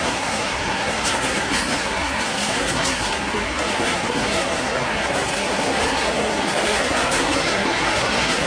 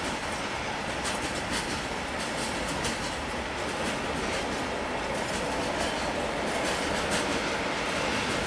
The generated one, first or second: first